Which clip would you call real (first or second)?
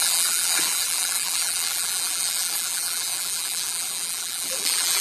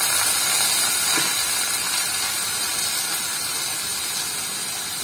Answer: second